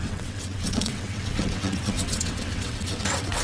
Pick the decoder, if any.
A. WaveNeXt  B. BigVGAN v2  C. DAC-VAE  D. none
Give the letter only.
A